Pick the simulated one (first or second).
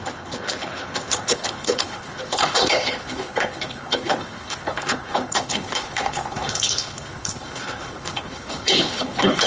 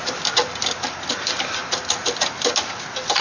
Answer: first